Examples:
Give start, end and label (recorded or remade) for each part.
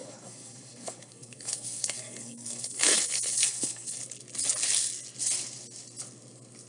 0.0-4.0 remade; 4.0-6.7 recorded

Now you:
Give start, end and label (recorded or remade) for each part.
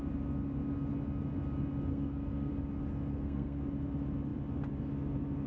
0.0-1.9 recorded; 1.9-2.5 remade; 2.5-3.1 recorded; 3.1-3.6 remade; 3.6-5.5 recorded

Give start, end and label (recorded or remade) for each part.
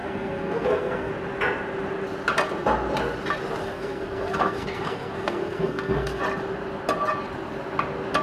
0.0-1.1 remade; 1.1-3.6 recorded; 3.6-6.2 remade; 6.2-8.2 recorded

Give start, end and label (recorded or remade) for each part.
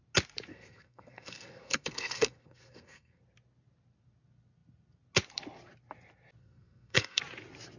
0.0-0.5 recorded; 0.5-3.2 remade; 3.2-6.4 recorded; 6.4-7.2 remade; 7.2-7.8 recorded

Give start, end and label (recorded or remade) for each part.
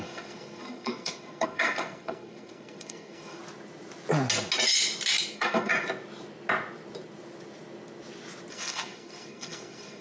0.0-3.4 remade; 3.4-5.3 recorded; 5.3-5.7 remade; 5.7-8.5 recorded; 8.5-10.0 remade